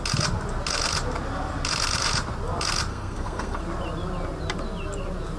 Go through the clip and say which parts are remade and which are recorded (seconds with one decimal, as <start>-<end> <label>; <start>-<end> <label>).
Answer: 0.0-2.9 recorded; 2.9-3.6 remade; 3.6-5.4 recorded